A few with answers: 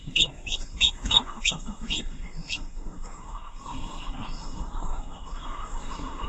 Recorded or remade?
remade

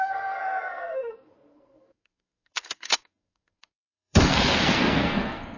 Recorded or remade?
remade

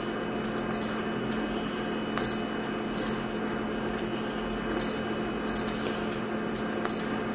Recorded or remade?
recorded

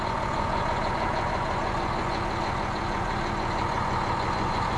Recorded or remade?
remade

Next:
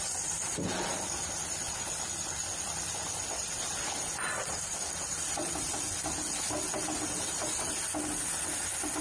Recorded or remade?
recorded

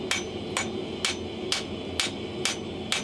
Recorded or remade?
recorded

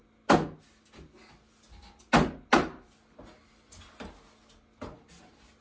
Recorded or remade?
recorded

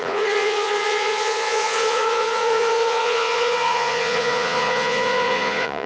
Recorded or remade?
remade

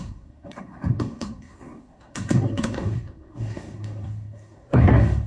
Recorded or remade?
remade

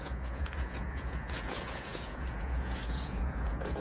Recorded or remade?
remade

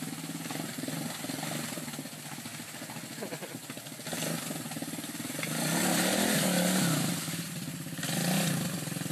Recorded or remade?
recorded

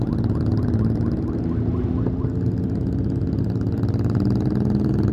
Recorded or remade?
recorded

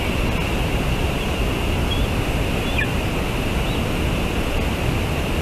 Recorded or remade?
recorded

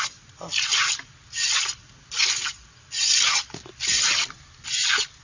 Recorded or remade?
recorded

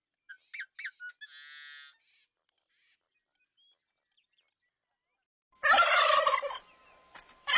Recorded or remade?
recorded